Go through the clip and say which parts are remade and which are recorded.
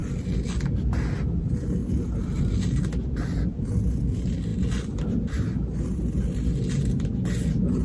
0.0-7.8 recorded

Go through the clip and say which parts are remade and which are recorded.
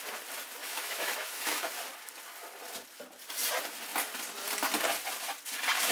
0.0-0.6 recorded; 0.6-1.7 remade; 1.7-5.9 recorded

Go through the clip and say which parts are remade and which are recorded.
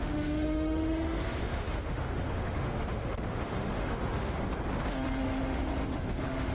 0.0-4.5 remade; 4.5-5.2 recorded; 5.2-6.5 remade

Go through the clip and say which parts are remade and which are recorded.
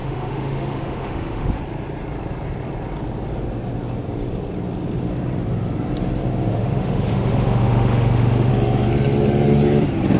0.0-1.6 remade; 1.6-6.5 recorded; 6.5-8.5 remade; 8.5-10.2 recorded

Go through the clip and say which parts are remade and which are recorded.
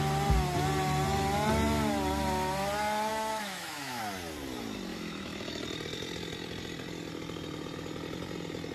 0.0-3.1 recorded; 3.1-4.0 remade; 4.0-4.9 recorded; 4.9-5.6 remade; 5.6-8.7 recorded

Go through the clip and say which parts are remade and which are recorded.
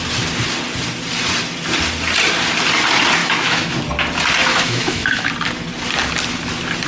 0.0-3.2 recorded; 3.2-3.8 remade; 3.8-4.5 recorded; 4.5-5.3 remade; 5.3-6.9 recorded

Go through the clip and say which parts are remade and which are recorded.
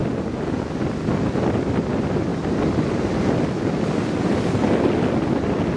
0.0-5.8 recorded